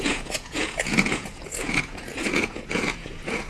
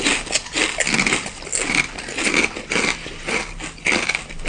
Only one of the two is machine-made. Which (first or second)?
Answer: first